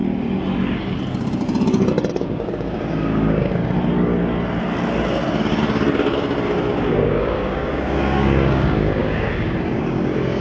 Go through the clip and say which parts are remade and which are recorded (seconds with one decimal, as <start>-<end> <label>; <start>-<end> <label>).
0.0-2.1 recorded; 2.1-3.6 remade; 3.6-6.9 recorded; 6.9-10.4 remade